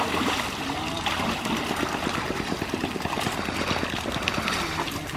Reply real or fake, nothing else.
real